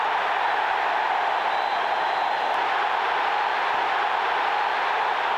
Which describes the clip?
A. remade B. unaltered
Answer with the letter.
B